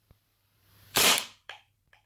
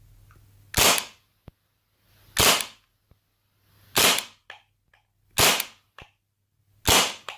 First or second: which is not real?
first